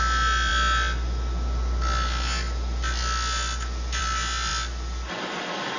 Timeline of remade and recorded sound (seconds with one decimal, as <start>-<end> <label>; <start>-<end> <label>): 0.0-5.8 recorded

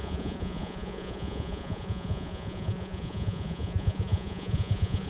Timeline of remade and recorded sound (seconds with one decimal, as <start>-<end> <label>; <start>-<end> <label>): 0.0-5.1 remade

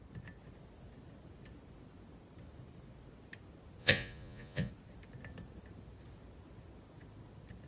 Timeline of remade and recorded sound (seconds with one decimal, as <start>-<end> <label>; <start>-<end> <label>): 0.0-3.8 recorded; 3.8-4.7 remade; 4.7-7.7 recorded

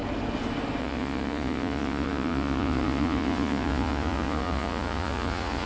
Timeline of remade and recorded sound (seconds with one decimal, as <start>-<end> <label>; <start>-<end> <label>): 0.0-0.8 recorded; 0.8-5.7 remade

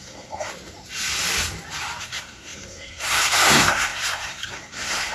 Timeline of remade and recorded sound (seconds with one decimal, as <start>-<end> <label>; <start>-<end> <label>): 0.0-0.5 remade; 0.5-2.0 recorded; 2.0-5.1 remade

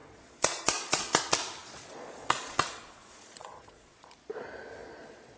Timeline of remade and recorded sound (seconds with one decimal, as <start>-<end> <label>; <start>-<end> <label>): 0.0-1.2 remade; 1.2-1.6 recorded; 1.6-4.3 remade; 4.3-4.8 recorded; 4.8-5.4 remade

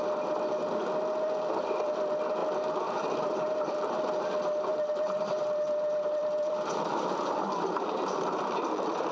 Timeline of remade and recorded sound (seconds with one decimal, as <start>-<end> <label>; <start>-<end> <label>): 0.0-2.4 recorded; 2.4-4.0 remade; 4.0-4.7 recorded; 4.7-9.1 remade

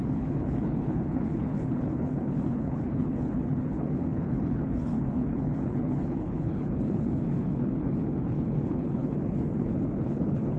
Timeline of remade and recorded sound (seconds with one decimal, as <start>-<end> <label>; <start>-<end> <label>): 0.0-10.6 remade